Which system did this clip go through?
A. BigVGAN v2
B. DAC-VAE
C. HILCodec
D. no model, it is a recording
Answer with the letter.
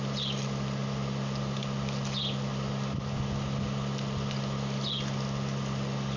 D